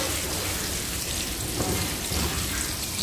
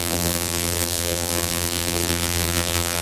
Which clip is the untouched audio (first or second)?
first